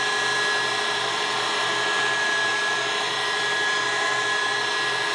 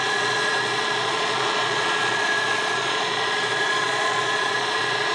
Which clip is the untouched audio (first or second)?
first